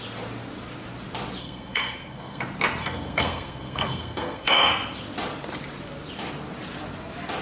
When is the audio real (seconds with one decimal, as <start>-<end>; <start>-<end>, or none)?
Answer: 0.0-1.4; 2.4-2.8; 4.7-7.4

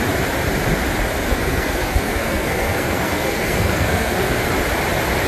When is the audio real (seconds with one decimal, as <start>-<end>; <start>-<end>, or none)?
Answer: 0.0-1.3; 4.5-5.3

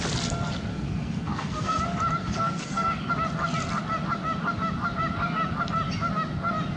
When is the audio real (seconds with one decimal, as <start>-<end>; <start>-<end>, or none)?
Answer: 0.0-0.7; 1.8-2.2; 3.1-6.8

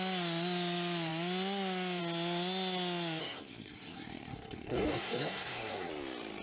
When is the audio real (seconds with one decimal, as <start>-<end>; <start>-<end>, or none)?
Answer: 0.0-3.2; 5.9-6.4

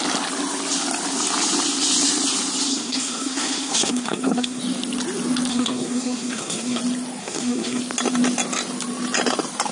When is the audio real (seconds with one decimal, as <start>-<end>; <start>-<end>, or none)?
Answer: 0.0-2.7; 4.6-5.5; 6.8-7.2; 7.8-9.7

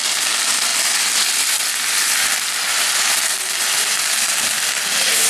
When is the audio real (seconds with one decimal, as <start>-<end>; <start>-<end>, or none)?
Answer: 0.0-5.3